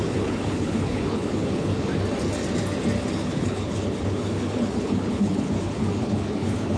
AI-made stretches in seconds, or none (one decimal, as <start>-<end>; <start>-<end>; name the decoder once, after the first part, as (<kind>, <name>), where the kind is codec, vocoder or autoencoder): 0.0-1.9 (codec, HILCodec); 3.1-6.8